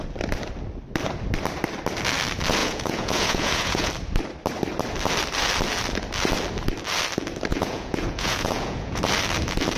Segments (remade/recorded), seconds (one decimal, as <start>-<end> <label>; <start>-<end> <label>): 0.0-2.6 recorded; 2.6-3.9 remade; 3.9-7.5 recorded; 7.5-9.0 remade; 9.0-9.8 recorded